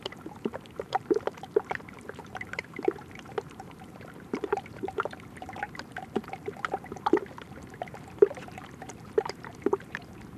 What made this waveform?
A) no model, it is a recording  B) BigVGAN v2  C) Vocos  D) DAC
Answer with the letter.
B